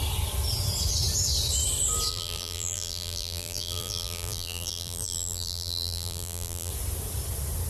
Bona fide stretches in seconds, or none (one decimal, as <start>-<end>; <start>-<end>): 0.0-2.1; 6.7-7.7